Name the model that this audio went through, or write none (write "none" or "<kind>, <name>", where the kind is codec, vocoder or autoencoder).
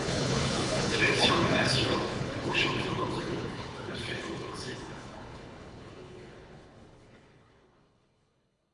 codec, HILCodec